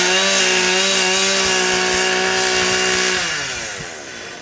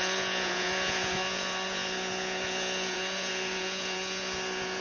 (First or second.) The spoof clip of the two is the second